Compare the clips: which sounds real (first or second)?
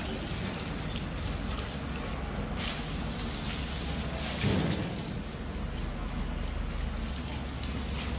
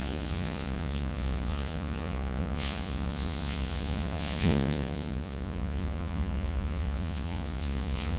first